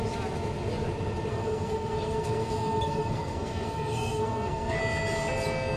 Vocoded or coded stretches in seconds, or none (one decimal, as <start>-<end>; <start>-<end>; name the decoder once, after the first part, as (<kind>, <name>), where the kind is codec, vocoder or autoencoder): 1.3-4.8 (codec, SNAC)